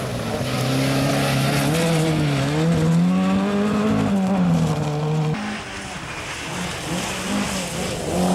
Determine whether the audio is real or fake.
real